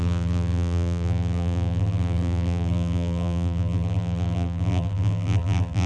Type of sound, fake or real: fake